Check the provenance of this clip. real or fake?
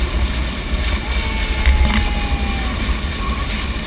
real